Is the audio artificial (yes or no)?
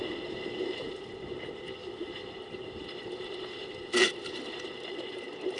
yes